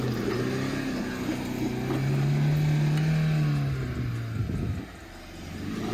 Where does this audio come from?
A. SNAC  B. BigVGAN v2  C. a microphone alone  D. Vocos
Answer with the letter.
C